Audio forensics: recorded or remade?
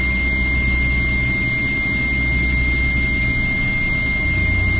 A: recorded